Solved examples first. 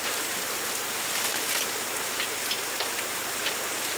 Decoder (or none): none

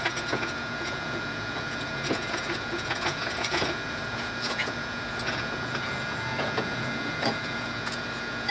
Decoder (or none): vocoder, Vocos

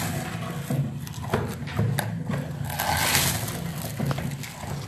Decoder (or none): none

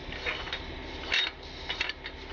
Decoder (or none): none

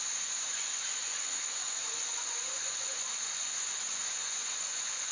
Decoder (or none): vocoder, Vocos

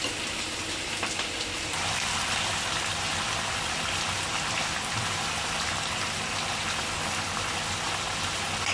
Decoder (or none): vocoder, BigVGAN v2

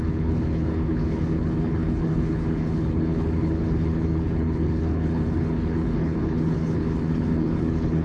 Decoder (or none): codec, HILCodec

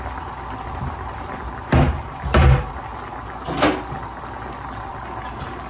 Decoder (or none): none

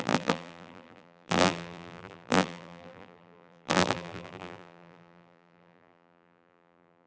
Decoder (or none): vocoder, BigVGAN v2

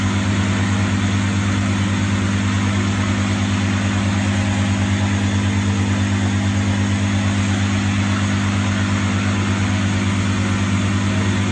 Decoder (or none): none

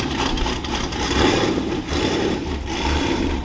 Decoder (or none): vocoder, BigVGAN v2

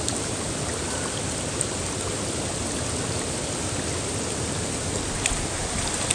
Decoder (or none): none